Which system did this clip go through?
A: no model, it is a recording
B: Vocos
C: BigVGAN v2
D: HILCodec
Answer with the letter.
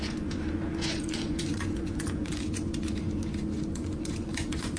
B